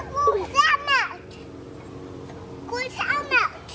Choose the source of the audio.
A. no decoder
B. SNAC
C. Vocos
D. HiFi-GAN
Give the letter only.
A